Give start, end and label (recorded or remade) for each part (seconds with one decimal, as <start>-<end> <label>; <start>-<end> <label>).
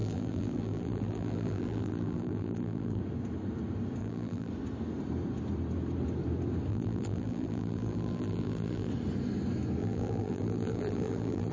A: 0.0-3.0 remade; 3.0-4.0 recorded; 4.0-4.5 remade; 4.5-6.7 recorded; 6.7-8.9 remade; 8.9-9.8 recorded; 9.8-11.5 remade